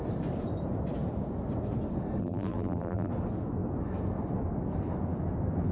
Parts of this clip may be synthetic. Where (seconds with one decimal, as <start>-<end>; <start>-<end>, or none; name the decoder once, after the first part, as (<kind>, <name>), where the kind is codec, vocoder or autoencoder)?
2.2-3.1 (vocoder, BigVGAN v2)